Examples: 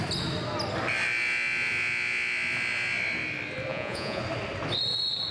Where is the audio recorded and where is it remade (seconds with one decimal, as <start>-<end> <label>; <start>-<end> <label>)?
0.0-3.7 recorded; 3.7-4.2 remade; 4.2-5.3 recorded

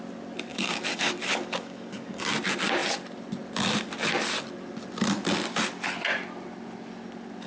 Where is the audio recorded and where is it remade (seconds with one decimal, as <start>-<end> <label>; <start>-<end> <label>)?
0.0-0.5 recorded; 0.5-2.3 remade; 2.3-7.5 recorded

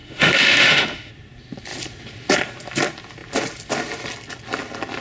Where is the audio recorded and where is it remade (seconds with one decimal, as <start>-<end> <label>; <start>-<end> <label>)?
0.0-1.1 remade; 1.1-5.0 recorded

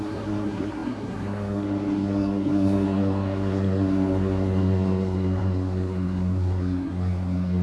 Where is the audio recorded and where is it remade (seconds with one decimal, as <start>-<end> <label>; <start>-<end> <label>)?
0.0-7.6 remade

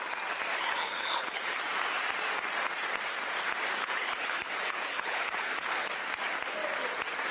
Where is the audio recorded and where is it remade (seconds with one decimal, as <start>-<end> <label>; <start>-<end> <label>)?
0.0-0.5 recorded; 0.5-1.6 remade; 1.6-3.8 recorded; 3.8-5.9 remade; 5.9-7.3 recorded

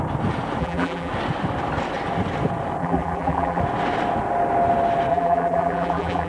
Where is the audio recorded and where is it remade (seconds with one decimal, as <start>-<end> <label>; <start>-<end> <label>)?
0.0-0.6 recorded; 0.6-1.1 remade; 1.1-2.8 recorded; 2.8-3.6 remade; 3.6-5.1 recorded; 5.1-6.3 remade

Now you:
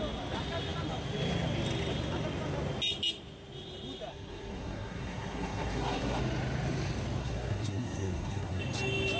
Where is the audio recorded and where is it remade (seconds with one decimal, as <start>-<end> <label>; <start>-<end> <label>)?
0.0-4.1 recorded; 4.1-6.2 remade; 6.2-7.2 recorded; 7.2-8.6 remade; 8.6-9.2 recorded

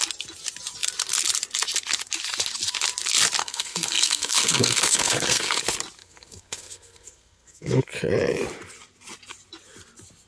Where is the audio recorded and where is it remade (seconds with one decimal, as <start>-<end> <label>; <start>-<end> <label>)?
0.0-3.4 recorded; 3.4-5.6 remade; 5.6-6.0 recorded; 6.0-7.8 remade; 7.8-10.3 recorded